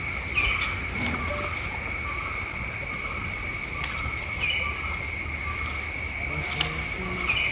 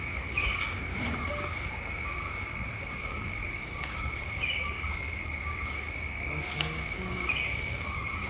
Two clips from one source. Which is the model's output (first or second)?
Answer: second